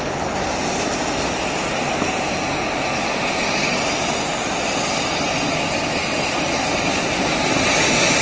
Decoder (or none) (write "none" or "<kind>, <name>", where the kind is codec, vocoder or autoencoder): none